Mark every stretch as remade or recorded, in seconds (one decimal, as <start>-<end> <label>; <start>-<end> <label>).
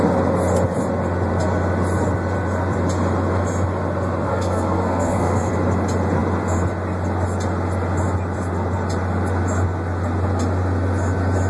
0.0-4.3 recorded; 4.3-5.5 remade; 5.5-11.5 recorded